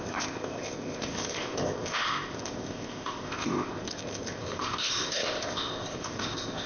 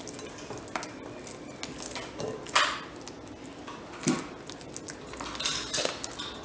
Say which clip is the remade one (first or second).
first